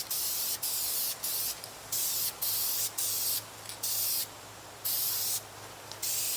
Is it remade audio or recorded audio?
recorded